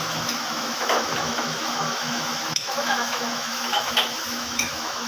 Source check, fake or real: fake